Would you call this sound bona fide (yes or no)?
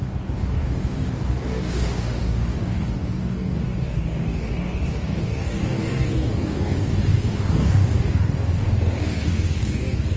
no